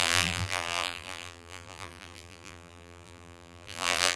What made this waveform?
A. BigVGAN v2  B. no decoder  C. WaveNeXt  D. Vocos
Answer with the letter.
A